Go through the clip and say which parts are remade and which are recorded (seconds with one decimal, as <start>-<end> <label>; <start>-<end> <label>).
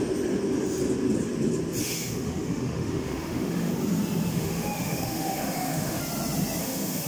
0.0-1.8 recorded; 1.8-3.7 remade; 3.7-4.3 recorded; 4.3-6.0 remade; 6.0-6.6 recorded; 6.6-7.1 remade